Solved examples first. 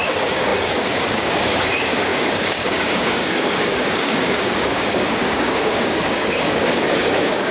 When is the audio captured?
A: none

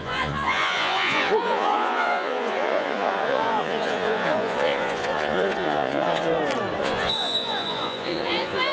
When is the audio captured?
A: 6.3-6.8

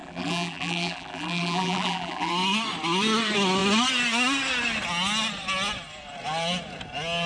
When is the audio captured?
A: 2.3-7.3

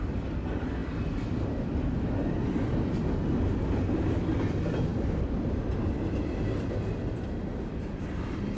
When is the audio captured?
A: 0.0-8.6

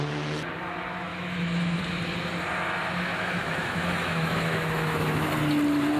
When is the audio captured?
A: 0.0-1.1; 1.8-3.1; 5.3-6.0